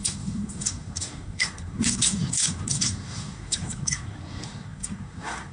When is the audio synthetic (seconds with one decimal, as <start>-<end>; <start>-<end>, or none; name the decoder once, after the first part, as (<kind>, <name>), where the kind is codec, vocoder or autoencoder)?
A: 0.0-5.5 (codec, SNAC)